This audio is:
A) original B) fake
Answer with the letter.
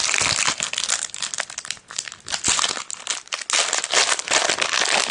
A